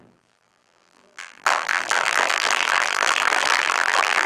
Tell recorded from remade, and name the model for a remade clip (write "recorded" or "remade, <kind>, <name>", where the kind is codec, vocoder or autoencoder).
remade, vocoder, BigVGAN v2